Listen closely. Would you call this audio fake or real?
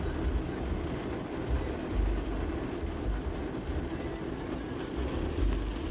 real